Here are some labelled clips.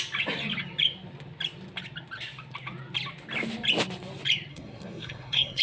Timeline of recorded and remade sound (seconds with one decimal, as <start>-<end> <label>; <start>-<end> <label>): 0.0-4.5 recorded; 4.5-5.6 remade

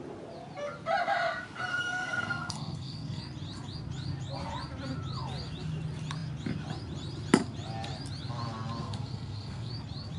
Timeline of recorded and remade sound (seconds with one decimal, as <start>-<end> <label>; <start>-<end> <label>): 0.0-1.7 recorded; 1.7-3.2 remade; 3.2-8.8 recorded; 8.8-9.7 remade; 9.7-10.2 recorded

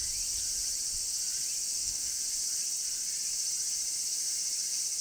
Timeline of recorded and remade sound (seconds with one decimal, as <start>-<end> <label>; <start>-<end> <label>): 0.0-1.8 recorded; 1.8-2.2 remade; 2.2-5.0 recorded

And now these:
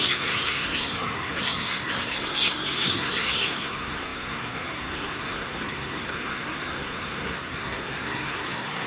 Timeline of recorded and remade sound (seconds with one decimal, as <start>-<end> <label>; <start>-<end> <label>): 0.0-8.9 remade